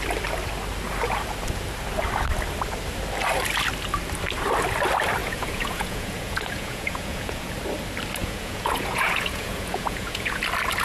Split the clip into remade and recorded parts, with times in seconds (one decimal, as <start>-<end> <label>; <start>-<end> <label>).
0.0-5.2 recorded; 5.2-7.5 remade; 7.5-8.2 recorded; 8.2-10.4 remade; 10.4-10.8 recorded